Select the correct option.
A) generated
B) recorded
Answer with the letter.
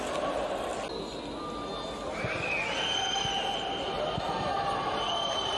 B